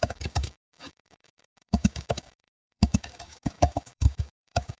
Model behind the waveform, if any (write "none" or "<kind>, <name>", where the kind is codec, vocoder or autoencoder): codec, DAC